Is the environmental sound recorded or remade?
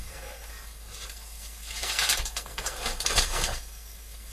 remade